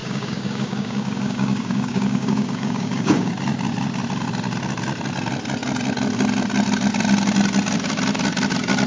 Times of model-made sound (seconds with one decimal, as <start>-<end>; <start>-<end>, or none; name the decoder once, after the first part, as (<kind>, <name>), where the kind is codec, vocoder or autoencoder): 0.0-3.3 (codec, DAC)